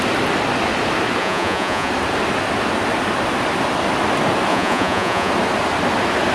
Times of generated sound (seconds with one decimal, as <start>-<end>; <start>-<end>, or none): 1.2-1.9; 4.5-5.3